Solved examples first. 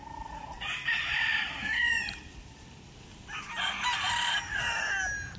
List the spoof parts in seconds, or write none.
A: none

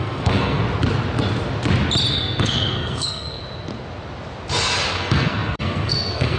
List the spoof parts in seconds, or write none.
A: 0.0-0.6; 2.1-3.4; 4.9-6.4

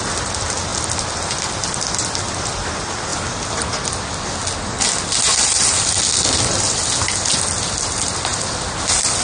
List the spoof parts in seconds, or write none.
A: none

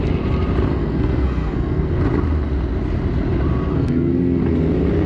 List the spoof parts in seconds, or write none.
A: 0.7-2.0; 3.7-4.4

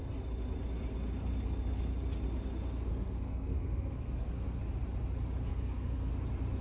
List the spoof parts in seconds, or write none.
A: 2.9-4.6; 5.5-6.1

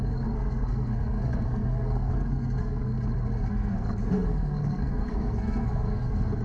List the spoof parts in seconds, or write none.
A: 0.0-2.9; 3.5-6.4

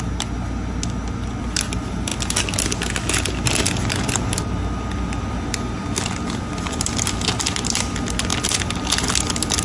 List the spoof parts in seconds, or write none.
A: none

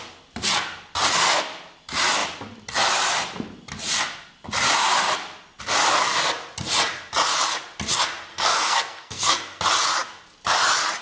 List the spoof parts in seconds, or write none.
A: 8.3-9.6